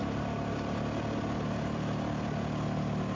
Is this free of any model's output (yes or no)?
yes